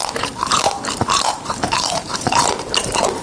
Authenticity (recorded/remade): remade